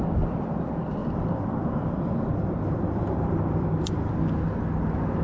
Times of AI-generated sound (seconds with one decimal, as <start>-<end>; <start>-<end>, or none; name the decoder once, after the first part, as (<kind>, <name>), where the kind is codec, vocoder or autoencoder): 1.0-4.1 (vocoder, BigVGAN v2)